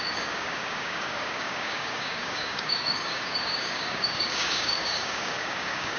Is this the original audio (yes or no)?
no